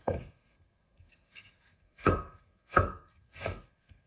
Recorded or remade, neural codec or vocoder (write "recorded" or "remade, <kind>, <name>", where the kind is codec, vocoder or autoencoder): remade, codec, SNAC